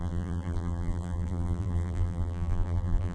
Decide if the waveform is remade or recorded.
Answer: remade